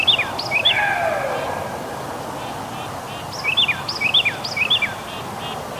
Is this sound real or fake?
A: real